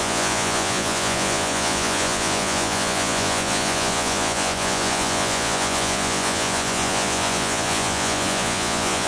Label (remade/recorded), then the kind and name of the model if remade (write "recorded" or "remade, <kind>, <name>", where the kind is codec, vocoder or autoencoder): remade, vocoder, Vocos